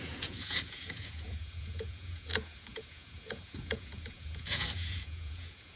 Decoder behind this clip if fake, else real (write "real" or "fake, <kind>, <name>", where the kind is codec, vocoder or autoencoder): fake, vocoder, Vocos